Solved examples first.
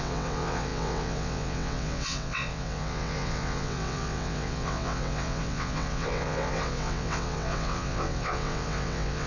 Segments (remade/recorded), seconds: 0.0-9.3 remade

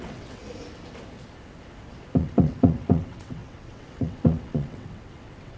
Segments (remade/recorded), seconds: 0.0-0.4 remade; 0.4-2.2 recorded; 2.2-5.6 remade

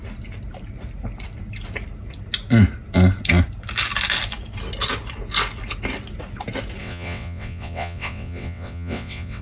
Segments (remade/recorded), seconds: 0.0-6.8 recorded; 6.8-9.4 remade

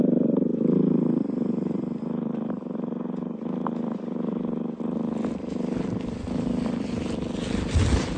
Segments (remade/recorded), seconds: 0.0-8.2 recorded

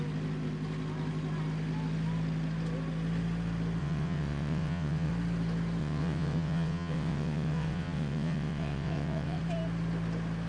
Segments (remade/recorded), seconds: 0.0-3.8 recorded; 3.8-5.1 remade; 5.1-5.8 recorded; 5.8-9.4 remade; 9.4-10.5 recorded

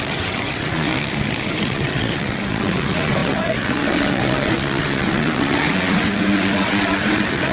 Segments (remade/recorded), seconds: 0.0-0.9 remade; 0.9-1.4 recorded; 1.4-7.5 remade

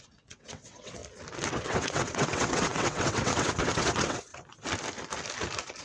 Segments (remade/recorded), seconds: 0.0-1.0 remade; 1.0-1.5 recorded; 1.5-4.3 remade; 4.3-5.8 recorded

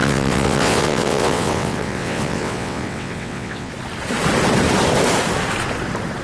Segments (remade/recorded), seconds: 0.0-3.7 remade; 3.7-6.2 recorded